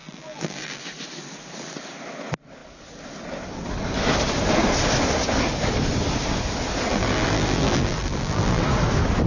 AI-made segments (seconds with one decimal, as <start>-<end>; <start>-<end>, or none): 0.0-0.8; 6.9-8.6